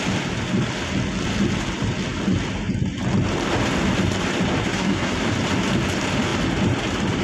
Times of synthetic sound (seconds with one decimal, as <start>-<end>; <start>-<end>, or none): 4.6-5.1